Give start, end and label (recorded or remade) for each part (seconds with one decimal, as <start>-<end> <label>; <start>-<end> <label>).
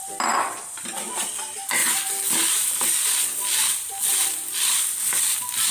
0.0-1.8 remade; 1.8-2.5 recorded; 2.5-4.1 remade; 4.1-5.7 recorded